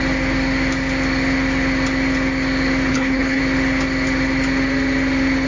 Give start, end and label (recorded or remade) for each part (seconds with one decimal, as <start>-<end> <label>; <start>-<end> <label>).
0.0-2.9 recorded; 2.9-3.4 remade; 3.4-5.5 recorded